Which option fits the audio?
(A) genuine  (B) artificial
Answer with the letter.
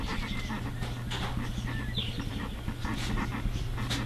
A